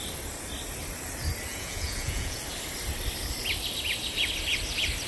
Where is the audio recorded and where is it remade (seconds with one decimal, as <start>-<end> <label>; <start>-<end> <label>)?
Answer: 0.0-1.5 recorded; 1.5-2.4 remade; 2.4-5.1 recorded